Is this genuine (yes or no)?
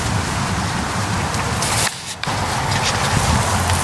yes